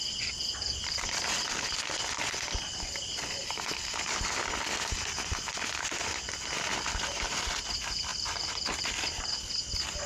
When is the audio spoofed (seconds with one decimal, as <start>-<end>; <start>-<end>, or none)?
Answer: 3.4-4.1; 8.1-8.8